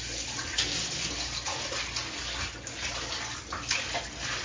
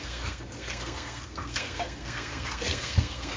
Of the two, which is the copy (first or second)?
second